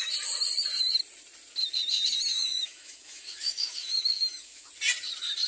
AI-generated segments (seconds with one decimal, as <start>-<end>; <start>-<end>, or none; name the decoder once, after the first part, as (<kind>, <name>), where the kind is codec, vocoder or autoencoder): 2.3-4.7 (autoencoder, DAC-VAE)